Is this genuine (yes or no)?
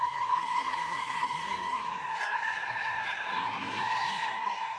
no